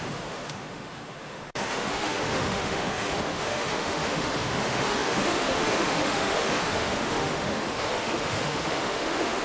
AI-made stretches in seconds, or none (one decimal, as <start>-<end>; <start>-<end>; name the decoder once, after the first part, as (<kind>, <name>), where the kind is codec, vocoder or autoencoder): 0.0-9.4 (autoencoder, DAC-VAE)